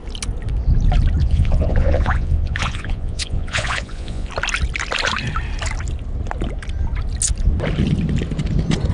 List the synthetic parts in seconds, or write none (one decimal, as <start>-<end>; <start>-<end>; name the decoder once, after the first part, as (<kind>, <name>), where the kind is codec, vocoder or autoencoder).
1.2-4.3 (vocoder, Vocos)